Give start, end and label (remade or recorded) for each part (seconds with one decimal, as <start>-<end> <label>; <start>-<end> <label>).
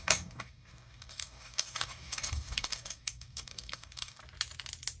0.0-4.2 remade; 4.2-5.0 recorded